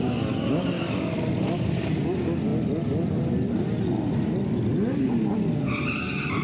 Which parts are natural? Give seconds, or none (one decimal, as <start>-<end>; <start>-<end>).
0.0-6.4